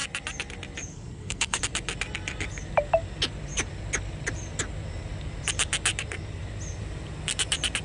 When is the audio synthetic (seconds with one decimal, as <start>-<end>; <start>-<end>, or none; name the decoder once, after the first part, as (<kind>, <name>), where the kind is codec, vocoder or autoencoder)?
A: 0.9-1.6 (codec, SNAC)